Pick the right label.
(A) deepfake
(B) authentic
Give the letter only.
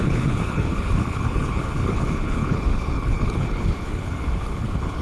A